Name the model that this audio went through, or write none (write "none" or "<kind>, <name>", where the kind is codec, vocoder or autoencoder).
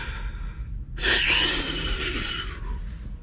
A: none